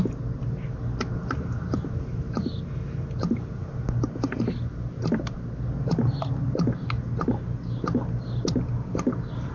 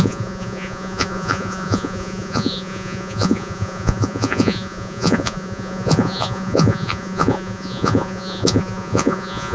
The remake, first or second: second